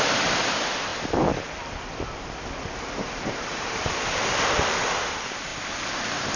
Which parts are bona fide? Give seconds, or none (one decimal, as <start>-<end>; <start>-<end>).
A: none